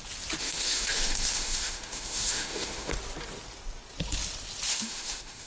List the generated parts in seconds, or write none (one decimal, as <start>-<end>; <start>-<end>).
0.4-2.9; 4.7-5.5